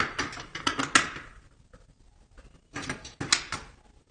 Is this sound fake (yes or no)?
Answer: no